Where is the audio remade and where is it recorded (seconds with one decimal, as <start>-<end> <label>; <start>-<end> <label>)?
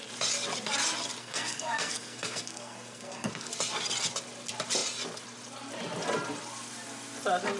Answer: 0.0-1.2 recorded; 1.2-3.5 remade; 3.5-7.6 recorded